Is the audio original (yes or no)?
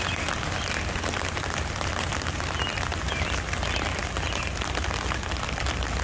yes